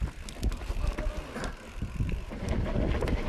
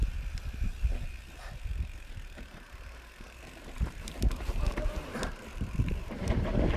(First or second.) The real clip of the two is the first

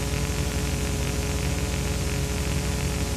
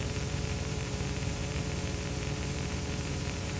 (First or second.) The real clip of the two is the first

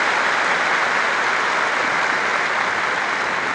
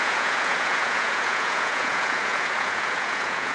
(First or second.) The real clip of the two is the first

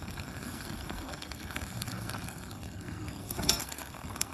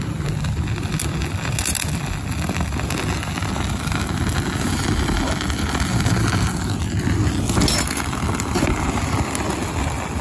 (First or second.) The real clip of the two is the second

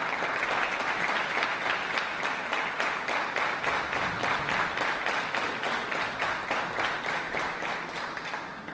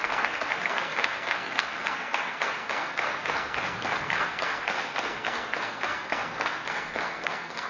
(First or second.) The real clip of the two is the first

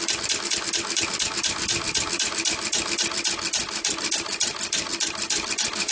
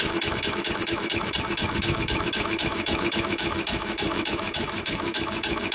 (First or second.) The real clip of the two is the first